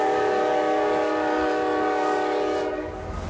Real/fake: fake